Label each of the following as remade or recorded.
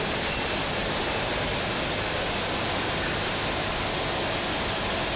recorded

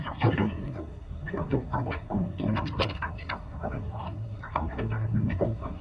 remade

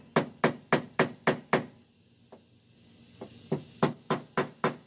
recorded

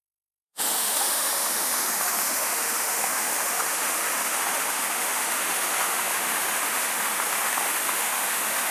remade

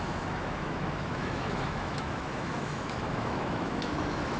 remade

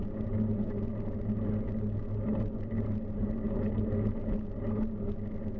recorded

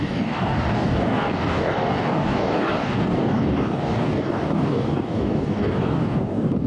remade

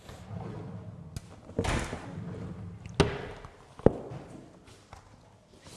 recorded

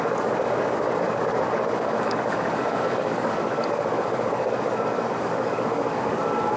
remade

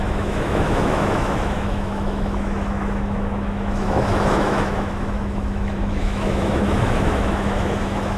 remade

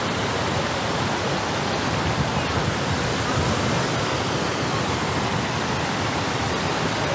recorded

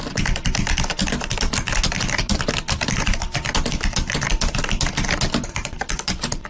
recorded